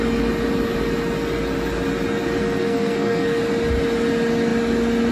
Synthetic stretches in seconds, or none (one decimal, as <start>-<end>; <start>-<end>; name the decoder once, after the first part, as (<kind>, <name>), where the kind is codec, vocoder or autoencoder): 2.4-3.4 (codec, SNAC)